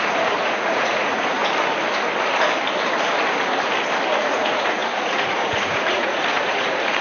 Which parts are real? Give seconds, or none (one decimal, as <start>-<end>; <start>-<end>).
1.4-4.3